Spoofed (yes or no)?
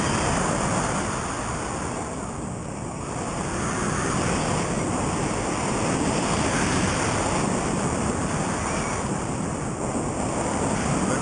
no